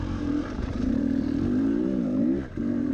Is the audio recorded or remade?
remade